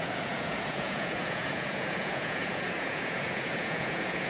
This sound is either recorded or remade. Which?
remade